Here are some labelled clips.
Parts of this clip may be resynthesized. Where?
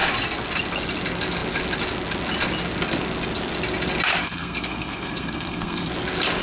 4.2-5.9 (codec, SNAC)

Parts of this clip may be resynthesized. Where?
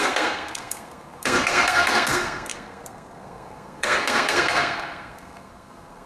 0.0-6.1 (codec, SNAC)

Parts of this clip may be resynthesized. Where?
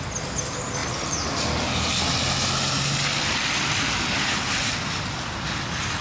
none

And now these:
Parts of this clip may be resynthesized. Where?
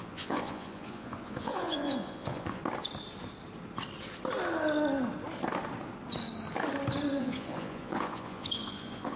0.0-2.6 (vocoder, Vocos); 7.2-9.2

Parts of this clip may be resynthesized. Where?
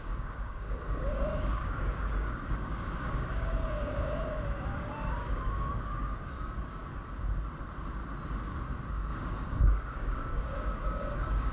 0.0-6.8 (codec, DAC); 8.5-11.5